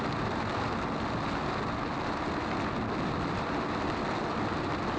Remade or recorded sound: recorded